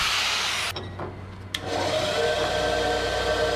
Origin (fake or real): real